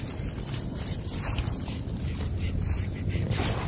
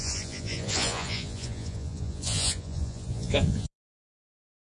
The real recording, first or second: first